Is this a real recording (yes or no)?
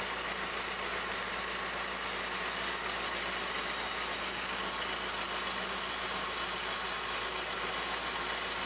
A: yes